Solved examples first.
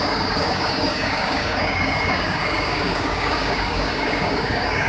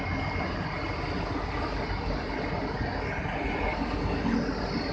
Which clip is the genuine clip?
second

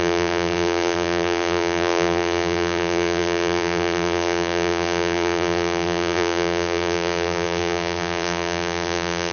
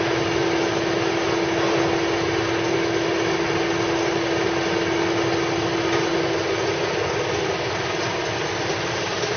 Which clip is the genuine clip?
second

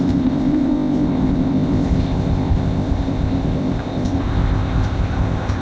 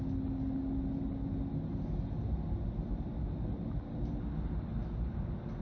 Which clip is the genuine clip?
second